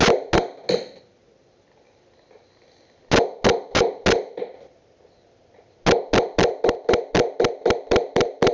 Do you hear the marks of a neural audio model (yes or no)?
no